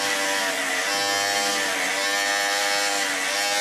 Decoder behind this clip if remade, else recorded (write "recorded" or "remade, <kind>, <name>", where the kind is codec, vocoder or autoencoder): recorded